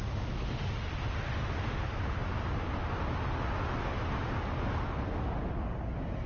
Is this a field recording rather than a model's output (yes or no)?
yes